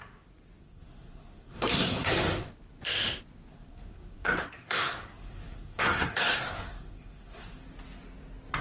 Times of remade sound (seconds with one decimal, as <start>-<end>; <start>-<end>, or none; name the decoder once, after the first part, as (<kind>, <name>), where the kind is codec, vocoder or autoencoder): 0.6-2.5 (codec, SNAC); 3.5-7.6